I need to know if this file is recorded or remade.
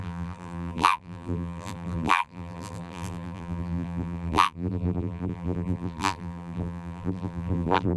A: remade